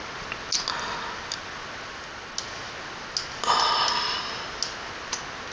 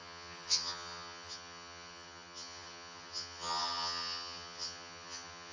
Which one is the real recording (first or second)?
first